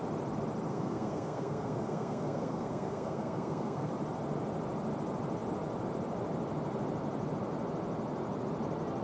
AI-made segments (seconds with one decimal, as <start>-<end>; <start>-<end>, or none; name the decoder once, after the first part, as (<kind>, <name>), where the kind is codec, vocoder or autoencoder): 0.7-3.9 (codec, SNAC)